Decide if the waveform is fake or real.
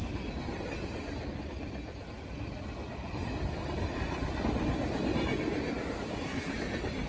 real